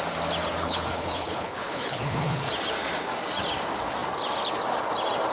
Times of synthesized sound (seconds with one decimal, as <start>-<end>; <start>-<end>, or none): 0.6-2.5